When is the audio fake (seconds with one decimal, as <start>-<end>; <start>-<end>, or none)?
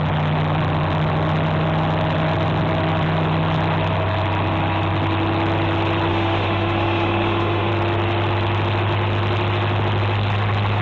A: 6.1-7.7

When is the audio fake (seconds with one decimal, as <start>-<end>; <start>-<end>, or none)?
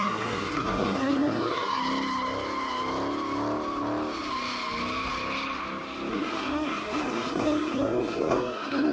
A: 0.0-1.8; 6.1-8.9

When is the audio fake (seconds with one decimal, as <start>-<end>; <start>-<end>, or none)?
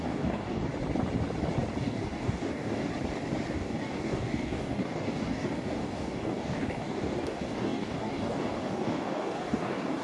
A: 0.0-0.7; 1.8-2.9; 3.5-10.0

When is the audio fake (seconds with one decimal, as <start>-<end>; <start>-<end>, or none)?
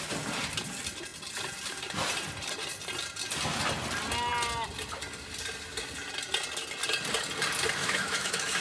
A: 7.8-8.6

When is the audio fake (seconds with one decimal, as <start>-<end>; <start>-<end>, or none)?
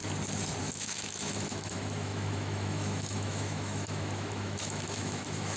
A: 0.6-5.6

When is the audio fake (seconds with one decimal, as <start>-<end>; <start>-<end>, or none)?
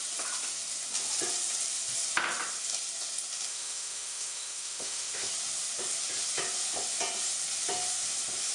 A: 3.5-5.3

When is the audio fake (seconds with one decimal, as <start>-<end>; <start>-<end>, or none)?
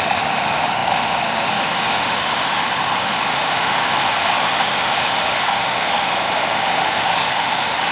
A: 0.0-7.9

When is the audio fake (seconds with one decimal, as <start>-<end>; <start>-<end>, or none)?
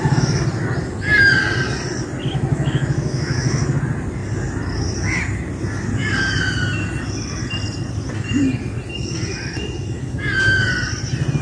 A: 2.5-3.8